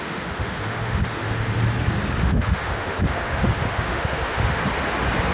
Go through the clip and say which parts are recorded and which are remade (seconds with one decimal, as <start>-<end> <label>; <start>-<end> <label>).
0.0-1.6 remade; 1.6-2.2 recorded; 2.2-4.6 remade; 4.6-5.3 recorded

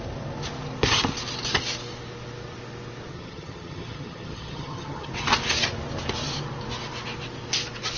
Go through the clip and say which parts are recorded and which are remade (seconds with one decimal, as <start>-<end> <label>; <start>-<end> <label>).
0.0-3.1 recorded; 3.1-5.1 remade; 5.1-8.0 recorded

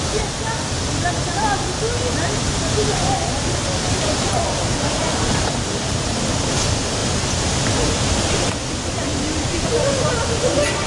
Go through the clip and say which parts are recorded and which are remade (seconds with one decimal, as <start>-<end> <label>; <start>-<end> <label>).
0.0-3.2 recorded; 3.2-6.2 remade; 6.2-9.1 recorded; 9.1-10.2 remade; 10.2-10.9 recorded

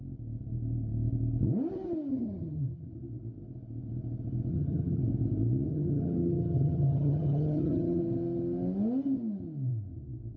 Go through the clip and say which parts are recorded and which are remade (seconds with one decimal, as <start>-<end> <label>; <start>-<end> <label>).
0.0-2.1 recorded; 2.1-2.9 remade; 2.9-4.5 recorded; 4.5-5.0 remade; 5.0-5.7 recorded; 5.7-8.0 remade; 8.0-10.4 recorded

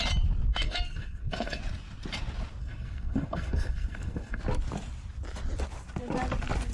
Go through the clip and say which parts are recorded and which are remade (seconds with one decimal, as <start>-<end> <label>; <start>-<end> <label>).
0.0-0.5 recorded; 0.5-1.6 remade; 1.6-2.6 recorded; 2.6-4.4 remade; 4.4-6.7 recorded

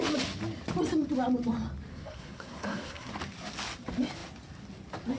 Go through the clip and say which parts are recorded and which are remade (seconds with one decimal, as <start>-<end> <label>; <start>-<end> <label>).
0.0-1.9 recorded; 1.9-3.1 remade; 3.1-5.2 recorded

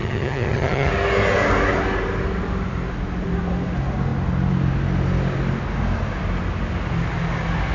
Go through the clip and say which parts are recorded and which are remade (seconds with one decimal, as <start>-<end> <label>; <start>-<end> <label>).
0.0-0.9 remade; 0.9-7.7 recorded

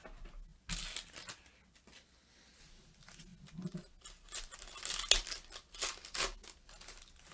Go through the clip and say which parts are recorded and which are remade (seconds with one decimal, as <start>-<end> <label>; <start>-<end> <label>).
0.0-7.3 recorded